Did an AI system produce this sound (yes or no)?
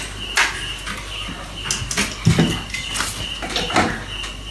no